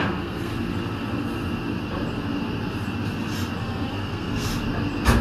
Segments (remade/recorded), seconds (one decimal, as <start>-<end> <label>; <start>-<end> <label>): 0.0-0.5 remade; 0.5-3.6 recorded; 3.6-4.5 remade; 4.5-5.2 recorded